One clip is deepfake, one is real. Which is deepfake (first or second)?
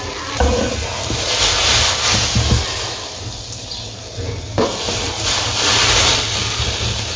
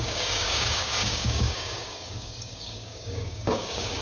second